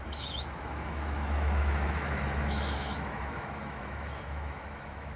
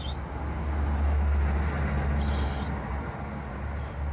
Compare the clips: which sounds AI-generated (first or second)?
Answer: first